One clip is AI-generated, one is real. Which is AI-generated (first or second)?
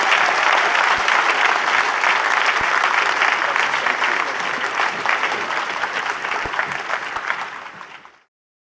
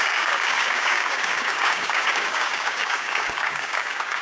second